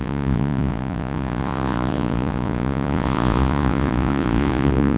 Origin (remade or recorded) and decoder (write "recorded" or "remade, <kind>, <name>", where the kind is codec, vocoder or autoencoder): remade, vocoder, Vocos